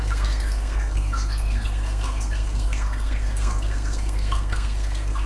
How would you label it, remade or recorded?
remade